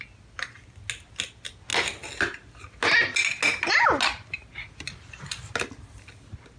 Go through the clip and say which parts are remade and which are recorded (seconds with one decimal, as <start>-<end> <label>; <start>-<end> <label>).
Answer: 0.0-6.6 recorded